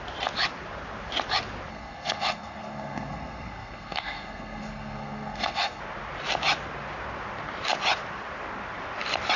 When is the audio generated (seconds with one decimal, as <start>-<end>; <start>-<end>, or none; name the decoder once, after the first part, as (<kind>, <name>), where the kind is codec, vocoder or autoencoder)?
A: 1.7-5.8 (codec, SNAC)